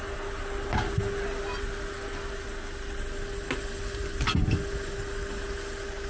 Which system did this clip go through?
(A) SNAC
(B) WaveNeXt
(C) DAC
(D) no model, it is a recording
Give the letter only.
D